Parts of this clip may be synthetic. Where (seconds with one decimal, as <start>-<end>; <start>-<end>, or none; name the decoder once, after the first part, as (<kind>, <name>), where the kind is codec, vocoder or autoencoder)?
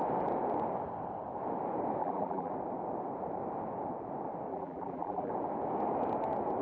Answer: 2.0-2.5 (vocoder, BigVGAN v2); 4.5-5.3